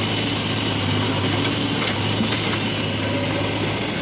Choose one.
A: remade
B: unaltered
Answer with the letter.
B